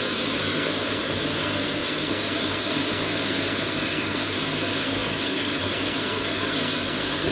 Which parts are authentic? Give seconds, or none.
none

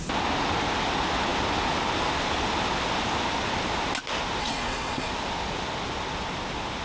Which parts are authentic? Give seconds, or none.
0.0-4.4; 5.1-6.8

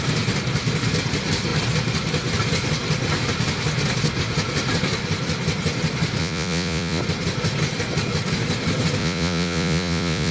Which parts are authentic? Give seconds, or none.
0.0-6.2; 7.0-9.0

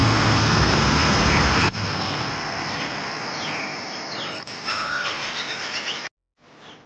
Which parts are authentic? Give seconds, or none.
3.2-4.7; 5.4-6.9

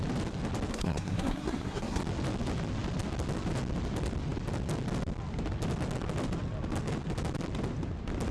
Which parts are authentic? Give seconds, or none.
0.0-0.7; 2.0-8.3

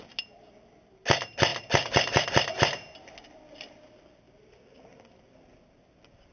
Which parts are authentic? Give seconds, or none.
0.0-6.3

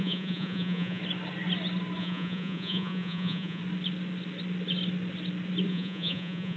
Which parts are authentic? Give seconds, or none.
1.0-2.0; 3.6-5.7